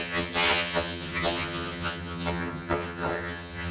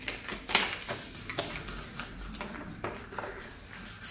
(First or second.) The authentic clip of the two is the second